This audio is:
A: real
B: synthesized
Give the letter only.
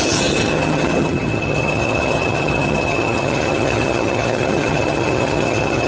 B